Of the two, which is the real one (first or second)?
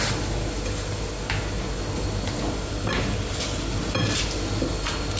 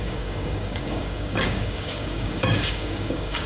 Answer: first